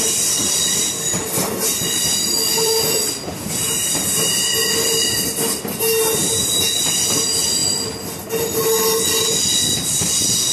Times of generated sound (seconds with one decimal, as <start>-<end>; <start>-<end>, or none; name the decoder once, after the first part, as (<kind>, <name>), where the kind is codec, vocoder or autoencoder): none